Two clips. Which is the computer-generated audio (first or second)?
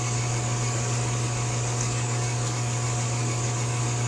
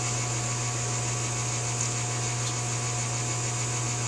first